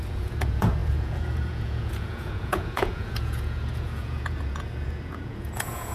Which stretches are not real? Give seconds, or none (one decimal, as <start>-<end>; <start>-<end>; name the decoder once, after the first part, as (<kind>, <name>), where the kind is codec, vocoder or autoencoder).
0.0-5.9 (vocoder, Vocos)